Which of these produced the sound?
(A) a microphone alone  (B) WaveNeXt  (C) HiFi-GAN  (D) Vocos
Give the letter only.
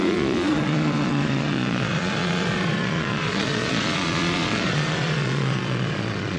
D